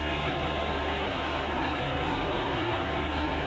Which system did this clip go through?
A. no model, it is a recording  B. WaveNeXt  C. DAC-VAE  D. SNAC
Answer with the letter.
D